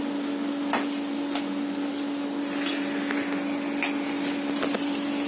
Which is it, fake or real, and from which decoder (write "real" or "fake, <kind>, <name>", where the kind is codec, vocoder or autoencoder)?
real